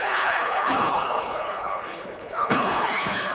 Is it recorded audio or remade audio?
remade